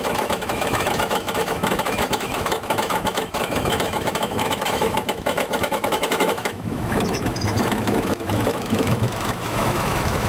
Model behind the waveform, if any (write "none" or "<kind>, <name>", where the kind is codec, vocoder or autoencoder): autoencoder, DAC-VAE